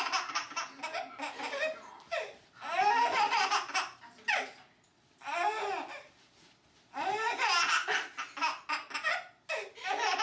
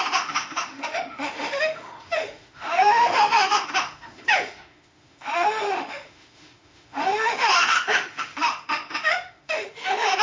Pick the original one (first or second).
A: first